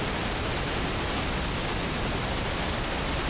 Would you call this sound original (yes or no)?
yes